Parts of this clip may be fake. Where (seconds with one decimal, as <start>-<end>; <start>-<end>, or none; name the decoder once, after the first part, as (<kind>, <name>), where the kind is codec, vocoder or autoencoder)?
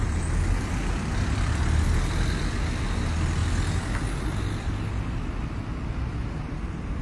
none